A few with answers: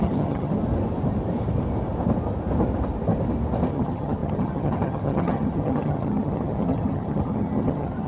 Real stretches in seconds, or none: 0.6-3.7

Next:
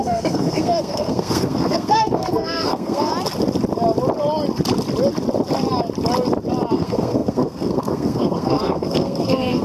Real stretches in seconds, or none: 3.1-6.7

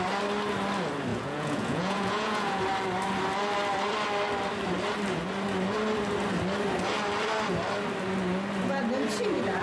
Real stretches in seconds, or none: 0.0-1.1; 2.6-9.6

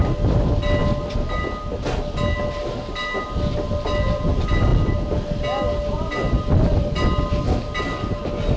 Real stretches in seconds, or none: 0.0-8.6